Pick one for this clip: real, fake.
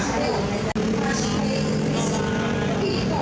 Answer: real